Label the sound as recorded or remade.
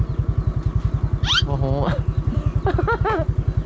recorded